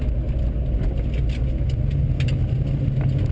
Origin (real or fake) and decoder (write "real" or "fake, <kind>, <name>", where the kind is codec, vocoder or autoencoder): real